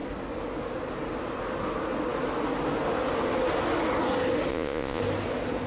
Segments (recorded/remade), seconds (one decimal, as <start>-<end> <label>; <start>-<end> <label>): 0.0-4.5 recorded; 4.5-5.0 remade; 5.0-5.7 recorded